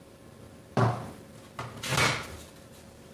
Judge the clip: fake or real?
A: fake